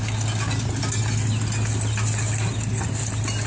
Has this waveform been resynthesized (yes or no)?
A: no